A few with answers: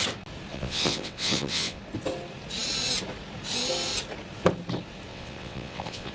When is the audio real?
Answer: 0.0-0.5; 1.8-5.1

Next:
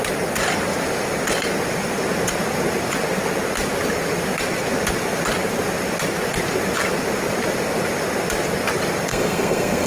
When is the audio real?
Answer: 0.0-9.1

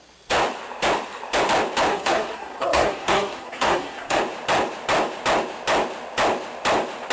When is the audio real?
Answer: 0.0-1.9; 4.2-7.1

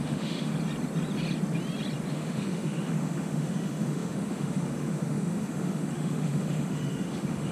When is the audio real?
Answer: 0.5-2.1

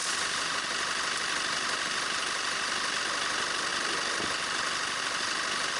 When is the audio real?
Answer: 3.0-5.8

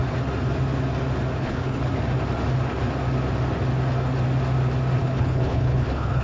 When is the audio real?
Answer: 0.0-1.4; 1.9-5.0

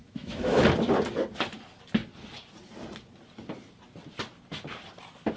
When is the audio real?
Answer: 0.6-5.4

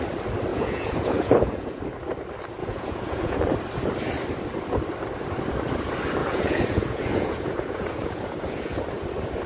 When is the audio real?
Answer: 0.0-0.5; 1.8-2.6; 3.4-6.2; 8.8-9.5